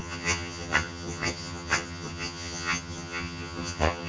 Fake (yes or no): yes